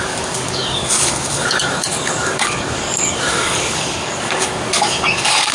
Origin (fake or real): fake